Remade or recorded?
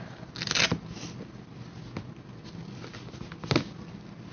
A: recorded